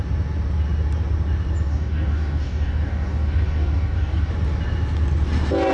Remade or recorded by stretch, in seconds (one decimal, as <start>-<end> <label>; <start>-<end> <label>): 0.0-1.7 recorded; 1.7-4.3 remade; 4.3-5.7 recorded